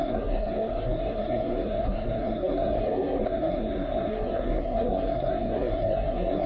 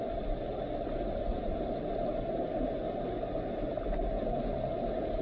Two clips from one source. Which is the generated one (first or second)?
first